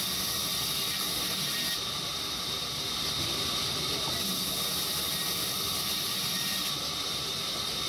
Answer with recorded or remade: recorded